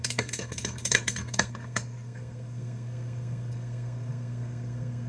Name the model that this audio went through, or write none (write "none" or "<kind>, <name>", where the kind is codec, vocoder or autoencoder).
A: codec, SNAC